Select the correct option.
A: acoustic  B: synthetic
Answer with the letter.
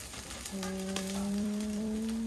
B